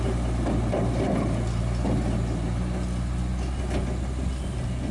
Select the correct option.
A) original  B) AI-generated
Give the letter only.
A